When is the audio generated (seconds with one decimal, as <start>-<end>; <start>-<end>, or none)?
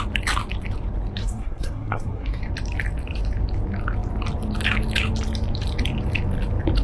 1.2-2.4